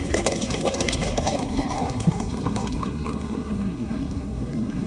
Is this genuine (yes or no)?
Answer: no